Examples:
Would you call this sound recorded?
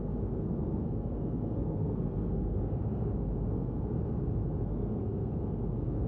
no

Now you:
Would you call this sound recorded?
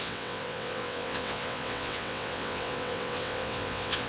no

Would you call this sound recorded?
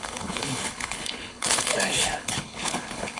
no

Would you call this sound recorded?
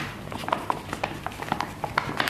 yes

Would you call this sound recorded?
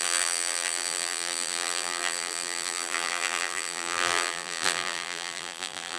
no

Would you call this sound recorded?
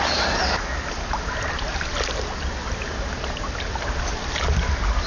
yes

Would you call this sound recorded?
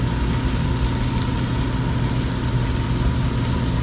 yes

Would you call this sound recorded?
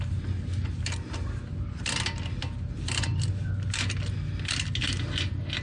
yes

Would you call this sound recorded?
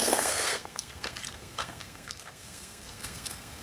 no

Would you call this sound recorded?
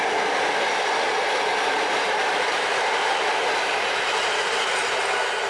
yes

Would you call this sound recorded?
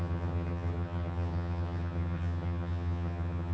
no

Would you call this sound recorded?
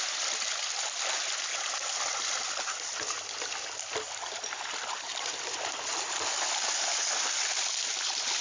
no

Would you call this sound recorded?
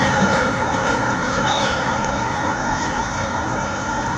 no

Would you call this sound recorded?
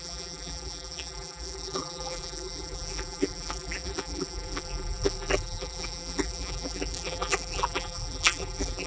no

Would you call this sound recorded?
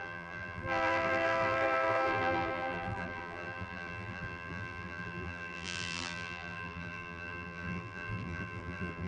no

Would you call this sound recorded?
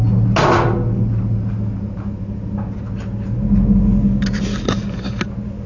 yes